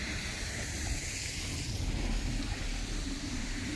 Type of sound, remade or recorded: remade